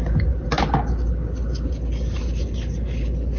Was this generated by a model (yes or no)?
no